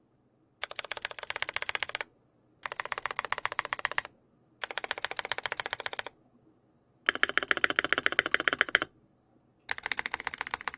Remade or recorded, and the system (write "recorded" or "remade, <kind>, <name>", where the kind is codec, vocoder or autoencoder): recorded